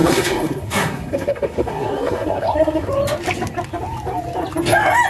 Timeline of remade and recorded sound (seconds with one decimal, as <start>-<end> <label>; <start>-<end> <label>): 0.0-2.9 remade; 2.9-5.1 recorded